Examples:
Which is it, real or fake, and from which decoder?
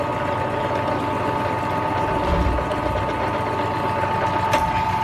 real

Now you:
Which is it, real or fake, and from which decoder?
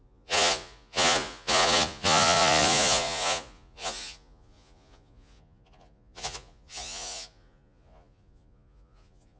fake, vocoder, Vocos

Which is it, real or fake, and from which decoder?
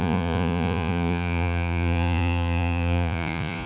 fake, vocoder, Vocos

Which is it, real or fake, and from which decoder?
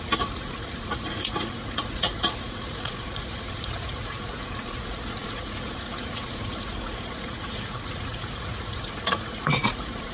fake, vocoder, Vocos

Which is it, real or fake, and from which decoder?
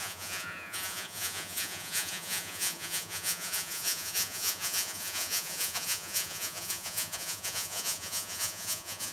fake, vocoder, Vocos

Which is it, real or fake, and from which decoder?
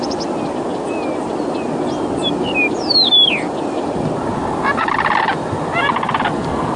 real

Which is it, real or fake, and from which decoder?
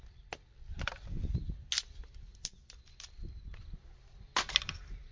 real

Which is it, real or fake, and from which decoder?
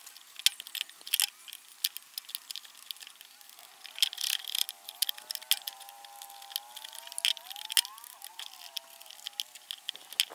real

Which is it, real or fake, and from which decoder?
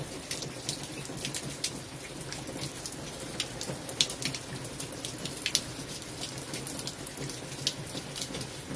real